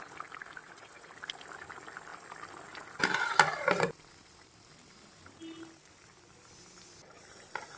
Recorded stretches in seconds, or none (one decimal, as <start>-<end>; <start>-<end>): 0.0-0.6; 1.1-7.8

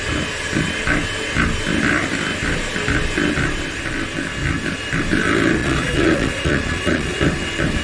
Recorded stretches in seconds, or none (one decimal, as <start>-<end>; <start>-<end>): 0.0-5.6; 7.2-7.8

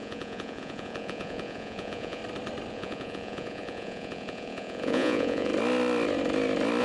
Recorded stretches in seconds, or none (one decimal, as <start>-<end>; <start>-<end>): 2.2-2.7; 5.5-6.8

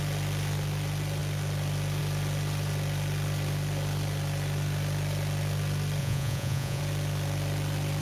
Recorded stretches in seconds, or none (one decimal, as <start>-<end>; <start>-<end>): 0.0-6.0; 6.8-8.0